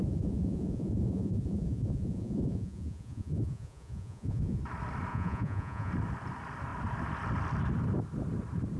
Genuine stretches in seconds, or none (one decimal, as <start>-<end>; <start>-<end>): 4.6-5.1; 5.9-8.8